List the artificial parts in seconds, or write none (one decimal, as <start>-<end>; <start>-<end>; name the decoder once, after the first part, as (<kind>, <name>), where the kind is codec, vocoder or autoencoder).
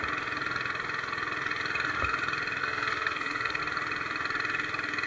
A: 2.6-3.6 (codec, SNAC)